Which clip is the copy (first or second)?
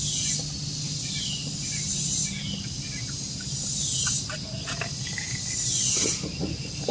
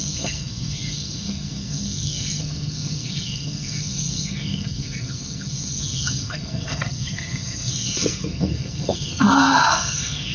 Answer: second